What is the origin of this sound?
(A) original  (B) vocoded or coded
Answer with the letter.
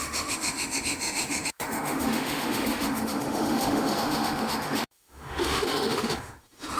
B